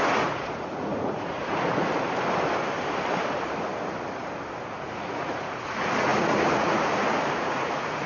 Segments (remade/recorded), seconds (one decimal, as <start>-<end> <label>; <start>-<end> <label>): 0.0-1.9 remade; 1.9-4.7 recorded; 4.7-8.1 remade